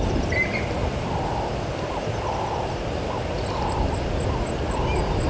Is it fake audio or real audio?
real